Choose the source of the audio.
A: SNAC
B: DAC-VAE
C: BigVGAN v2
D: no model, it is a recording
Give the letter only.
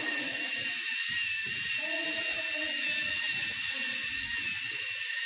D